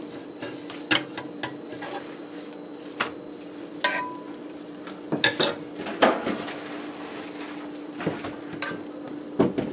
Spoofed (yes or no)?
no